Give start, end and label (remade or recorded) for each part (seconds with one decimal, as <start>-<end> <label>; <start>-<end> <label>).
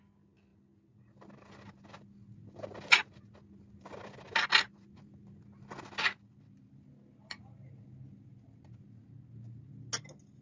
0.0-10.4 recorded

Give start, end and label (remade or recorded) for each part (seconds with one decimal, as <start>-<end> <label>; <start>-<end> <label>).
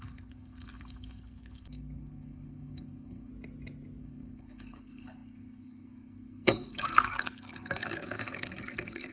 0.0-3.3 remade; 3.3-4.0 recorded; 4.0-9.1 remade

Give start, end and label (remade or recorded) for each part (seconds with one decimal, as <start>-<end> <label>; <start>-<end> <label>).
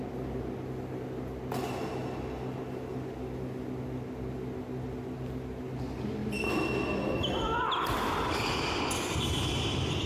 0.0-10.1 recorded